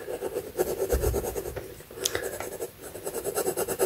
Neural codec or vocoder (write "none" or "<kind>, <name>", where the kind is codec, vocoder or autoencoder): none